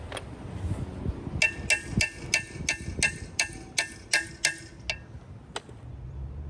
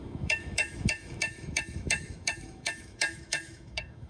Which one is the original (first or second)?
first